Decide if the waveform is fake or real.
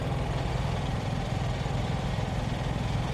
real